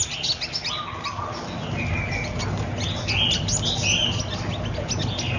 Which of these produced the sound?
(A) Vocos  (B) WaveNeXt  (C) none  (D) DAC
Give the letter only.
C